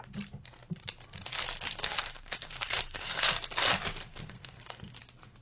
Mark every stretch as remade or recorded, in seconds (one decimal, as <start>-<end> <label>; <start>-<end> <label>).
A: 0.0-1.8 recorded; 1.8-3.3 remade; 3.3-4.1 recorded; 4.1-5.0 remade; 5.0-5.4 recorded